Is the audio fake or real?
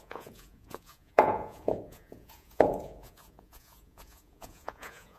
fake